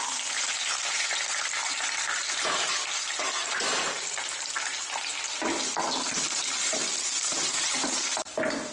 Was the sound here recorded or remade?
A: remade